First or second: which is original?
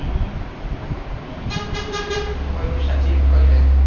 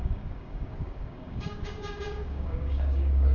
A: first